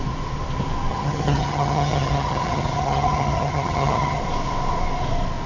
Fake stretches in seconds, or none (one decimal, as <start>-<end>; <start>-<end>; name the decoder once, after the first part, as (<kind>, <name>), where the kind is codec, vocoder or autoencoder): 0.9-4.2 (vocoder, HiFi-GAN)